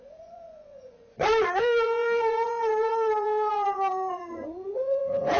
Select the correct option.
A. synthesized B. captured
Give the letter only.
A